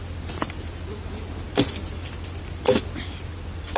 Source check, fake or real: real